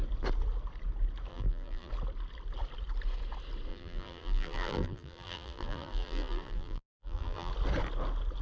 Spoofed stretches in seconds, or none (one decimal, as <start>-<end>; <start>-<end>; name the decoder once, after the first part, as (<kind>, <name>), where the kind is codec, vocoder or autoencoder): 1.3-1.9 (vocoder, BigVGAN v2); 3.7-7.5